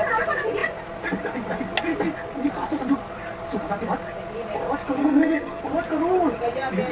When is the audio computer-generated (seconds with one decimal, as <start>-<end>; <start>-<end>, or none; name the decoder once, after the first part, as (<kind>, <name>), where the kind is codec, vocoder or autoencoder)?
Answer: 5.0-5.6 (codec, SNAC)